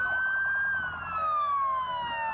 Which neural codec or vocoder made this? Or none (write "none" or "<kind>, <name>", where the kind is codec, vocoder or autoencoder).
none